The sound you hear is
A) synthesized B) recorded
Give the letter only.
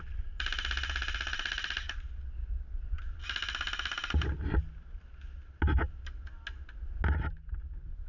B